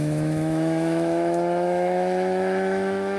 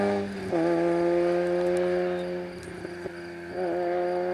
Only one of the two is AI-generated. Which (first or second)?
first